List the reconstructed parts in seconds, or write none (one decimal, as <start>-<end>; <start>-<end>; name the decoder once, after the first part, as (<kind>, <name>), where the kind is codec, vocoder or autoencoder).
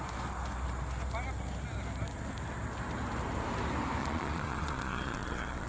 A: 4.0-5.7 (vocoder, Vocos)